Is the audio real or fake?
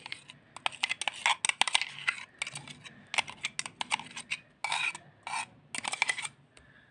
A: real